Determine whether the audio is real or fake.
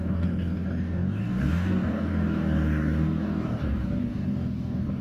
fake